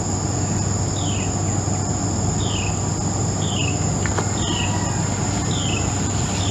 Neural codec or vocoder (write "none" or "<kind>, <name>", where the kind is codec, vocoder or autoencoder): none